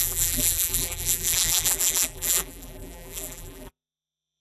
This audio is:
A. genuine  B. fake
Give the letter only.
B